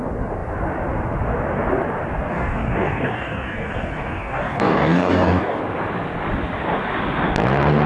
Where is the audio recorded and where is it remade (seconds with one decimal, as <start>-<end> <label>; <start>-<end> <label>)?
0.0-2.3 recorded; 2.3-5.6 remade; 5.6-7.9 recorded